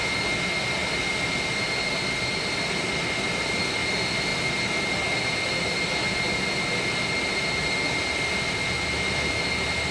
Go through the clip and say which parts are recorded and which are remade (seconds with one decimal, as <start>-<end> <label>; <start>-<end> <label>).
0.0-9.9 recorded